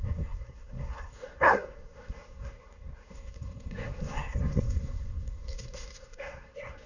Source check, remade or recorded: remade